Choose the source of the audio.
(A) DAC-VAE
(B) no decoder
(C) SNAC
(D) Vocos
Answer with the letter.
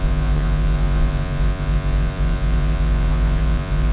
D